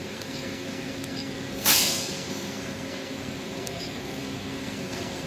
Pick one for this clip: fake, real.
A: fake